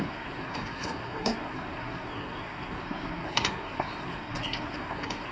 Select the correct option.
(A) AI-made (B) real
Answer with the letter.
A